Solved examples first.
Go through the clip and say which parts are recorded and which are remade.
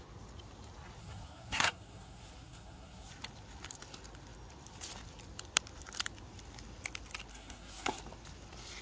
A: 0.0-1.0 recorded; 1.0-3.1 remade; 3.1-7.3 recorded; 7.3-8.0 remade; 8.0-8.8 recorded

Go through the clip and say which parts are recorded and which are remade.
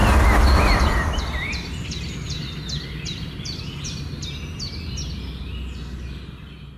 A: 0.0-1.2 remade; 1.2-6.8 recorded